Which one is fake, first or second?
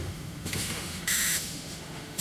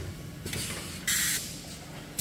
first